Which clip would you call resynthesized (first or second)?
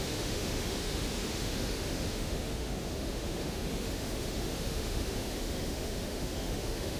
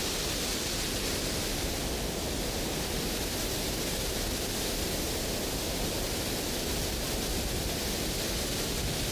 first